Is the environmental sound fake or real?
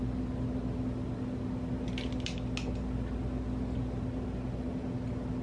real